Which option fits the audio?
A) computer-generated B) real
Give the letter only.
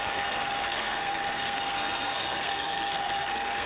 A